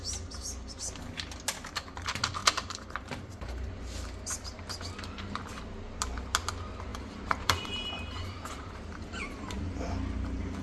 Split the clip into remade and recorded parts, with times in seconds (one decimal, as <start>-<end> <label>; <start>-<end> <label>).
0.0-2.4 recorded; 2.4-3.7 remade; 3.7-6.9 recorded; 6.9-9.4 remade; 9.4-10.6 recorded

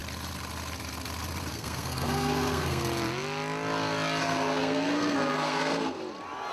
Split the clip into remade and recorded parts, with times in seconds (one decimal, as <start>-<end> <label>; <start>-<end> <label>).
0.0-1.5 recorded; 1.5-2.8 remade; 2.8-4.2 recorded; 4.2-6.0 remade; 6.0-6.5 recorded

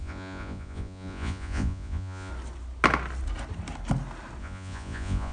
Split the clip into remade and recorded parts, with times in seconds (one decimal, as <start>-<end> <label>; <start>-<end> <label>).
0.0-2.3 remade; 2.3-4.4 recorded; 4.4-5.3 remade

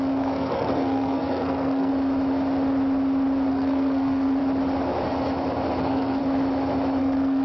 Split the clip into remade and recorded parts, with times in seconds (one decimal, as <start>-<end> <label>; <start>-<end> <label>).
0.0-1.9 remade; 1.9-3.5 recorded; 3.5-4.4 remade; 4.4-5.8 recorded; 5.8-6.2 remade; 6.2-7.0 recorded; 7.0-7.4 remade

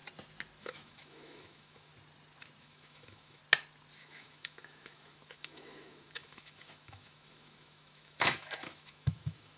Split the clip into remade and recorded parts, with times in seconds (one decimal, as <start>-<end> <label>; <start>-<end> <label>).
0.0-0.6 recorded; 0.6-1.9 remade; 1.9-2.6 recorded; 2.6-3.4 remade; 3.4-4.0 recorded; 4.0-9.6 remade

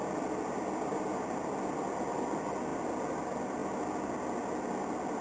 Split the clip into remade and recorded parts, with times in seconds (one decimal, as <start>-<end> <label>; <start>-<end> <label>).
0.0-5.2 recorded